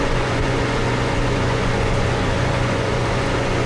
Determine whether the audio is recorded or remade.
remade